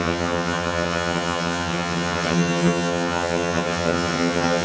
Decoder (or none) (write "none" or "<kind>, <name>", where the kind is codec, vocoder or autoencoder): vocoder, HiFi-GAN